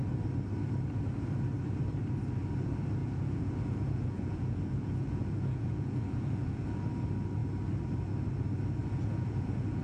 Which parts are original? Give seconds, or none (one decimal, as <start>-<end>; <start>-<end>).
0.0-3.0; 6.7-8.8